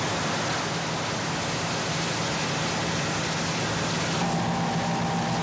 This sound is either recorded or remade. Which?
recorded